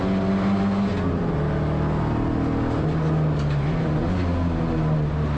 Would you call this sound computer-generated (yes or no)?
no